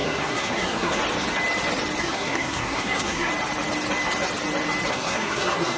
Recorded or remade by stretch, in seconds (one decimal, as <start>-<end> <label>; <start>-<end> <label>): 0.0-1.0 remade; 1.0-2.0 recorded; 2.0-3.3 remade; 3.3-4.9 recorded; 4.9-5.8 remade